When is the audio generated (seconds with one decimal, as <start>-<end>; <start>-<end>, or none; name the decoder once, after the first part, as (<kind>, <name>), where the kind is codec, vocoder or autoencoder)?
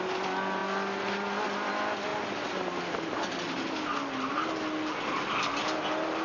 none